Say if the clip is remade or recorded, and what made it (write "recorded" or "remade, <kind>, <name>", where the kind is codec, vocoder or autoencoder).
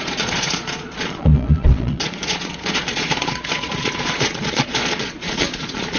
remade, vocoder, Vocos